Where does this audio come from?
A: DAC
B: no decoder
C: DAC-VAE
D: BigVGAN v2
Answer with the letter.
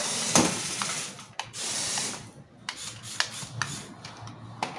B